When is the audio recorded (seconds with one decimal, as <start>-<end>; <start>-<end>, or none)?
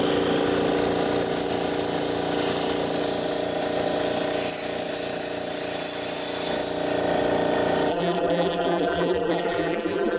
0.0-7.9